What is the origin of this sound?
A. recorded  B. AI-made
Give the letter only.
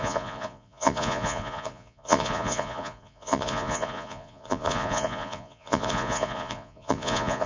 B